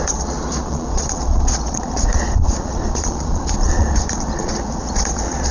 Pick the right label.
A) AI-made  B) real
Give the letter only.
A